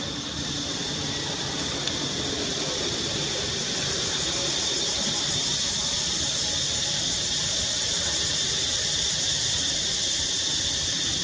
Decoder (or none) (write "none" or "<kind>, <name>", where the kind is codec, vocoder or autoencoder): vocoder, BigVGAN v2